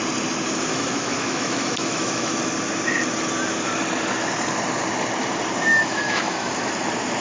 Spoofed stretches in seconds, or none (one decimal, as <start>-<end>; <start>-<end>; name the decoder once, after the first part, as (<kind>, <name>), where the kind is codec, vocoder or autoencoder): 0.7-2.4 (autoencoder, DAC-VAE); 5.7-6.5